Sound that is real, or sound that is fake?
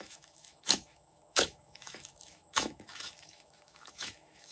fake